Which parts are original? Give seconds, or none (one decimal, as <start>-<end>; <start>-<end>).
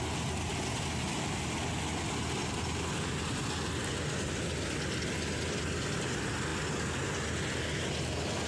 0.0-8.5